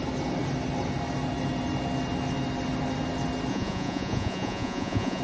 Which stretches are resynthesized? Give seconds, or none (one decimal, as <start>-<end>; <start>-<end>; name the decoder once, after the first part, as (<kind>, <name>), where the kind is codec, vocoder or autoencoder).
3.5-5.2 (vocoder, Vocos)